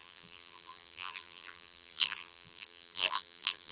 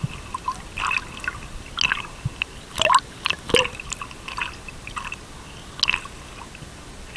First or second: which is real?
second